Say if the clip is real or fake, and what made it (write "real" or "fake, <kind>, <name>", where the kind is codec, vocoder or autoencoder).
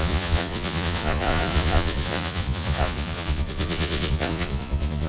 fake, vocoder, Vocos